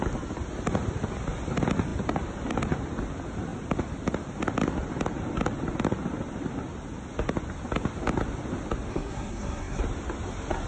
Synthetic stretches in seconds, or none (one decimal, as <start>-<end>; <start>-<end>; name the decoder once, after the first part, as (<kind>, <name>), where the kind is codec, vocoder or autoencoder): 8.9-9.8 (codec, SNAC)